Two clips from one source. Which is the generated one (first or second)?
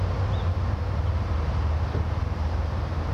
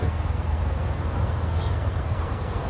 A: second